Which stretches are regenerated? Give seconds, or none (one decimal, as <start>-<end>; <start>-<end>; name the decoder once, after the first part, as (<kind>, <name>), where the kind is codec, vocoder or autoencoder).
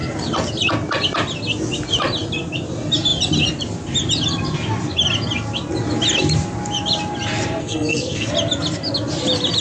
7.6-8.3 (codec, SNAC)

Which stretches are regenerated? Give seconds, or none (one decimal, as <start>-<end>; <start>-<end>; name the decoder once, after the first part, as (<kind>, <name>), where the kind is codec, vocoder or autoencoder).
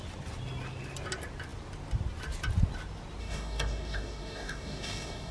3.2-5.3 (codec, DAC)